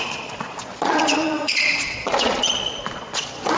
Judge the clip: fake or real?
fake